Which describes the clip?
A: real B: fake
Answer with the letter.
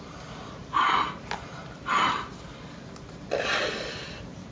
A